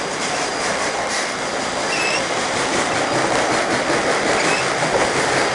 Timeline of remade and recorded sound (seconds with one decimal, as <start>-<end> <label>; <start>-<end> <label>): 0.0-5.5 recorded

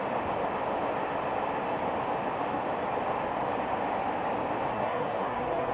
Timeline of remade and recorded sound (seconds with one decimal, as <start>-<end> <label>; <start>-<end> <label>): 0.0-4.7 recorded; 4.7-5.7 remade

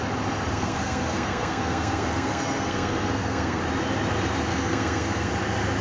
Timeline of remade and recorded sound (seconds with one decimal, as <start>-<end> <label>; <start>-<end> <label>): 0.0-0.5 recorded; 0.5-3.6 remade; 3.6-4.5 recorded; 4.5-5.3 remade; 5.3-5.8 recorded